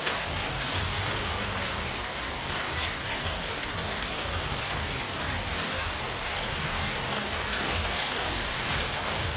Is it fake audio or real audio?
fake